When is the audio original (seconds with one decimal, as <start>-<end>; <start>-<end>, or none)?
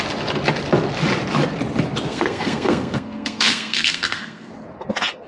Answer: 0.0-2.1; 4.5-5.3